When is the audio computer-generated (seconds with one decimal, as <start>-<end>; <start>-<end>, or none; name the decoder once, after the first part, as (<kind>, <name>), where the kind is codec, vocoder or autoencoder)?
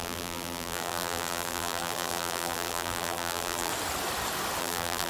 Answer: 0.0-3.7 (vocoder, BigVGAN v2); 4.6-5.1